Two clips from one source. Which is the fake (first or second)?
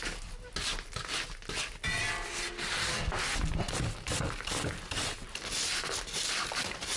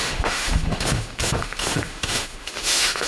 second